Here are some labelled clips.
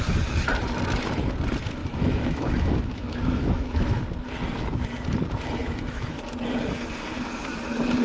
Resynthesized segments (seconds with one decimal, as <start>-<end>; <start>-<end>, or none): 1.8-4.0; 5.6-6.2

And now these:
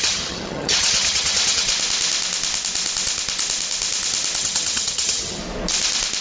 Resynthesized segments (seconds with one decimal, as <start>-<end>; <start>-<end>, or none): 0.0-1.7; 4.4-5.4

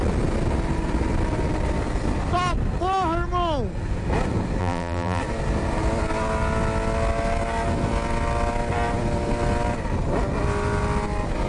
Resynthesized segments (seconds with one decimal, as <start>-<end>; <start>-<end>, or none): 4.6-5.2

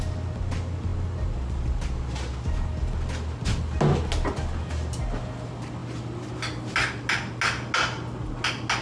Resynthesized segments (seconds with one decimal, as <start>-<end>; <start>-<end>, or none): none